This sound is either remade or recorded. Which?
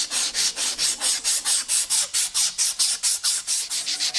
recorded